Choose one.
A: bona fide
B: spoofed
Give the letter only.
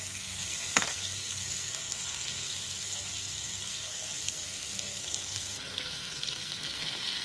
B